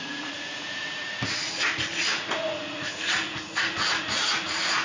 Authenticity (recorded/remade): remade